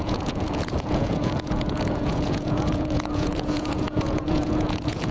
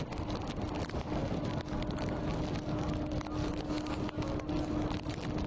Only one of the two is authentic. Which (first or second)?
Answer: second